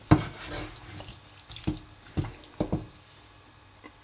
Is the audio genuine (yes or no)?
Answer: yes